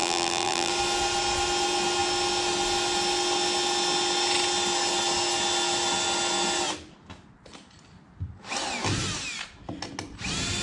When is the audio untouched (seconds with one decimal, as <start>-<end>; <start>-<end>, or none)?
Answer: 0.7-10.6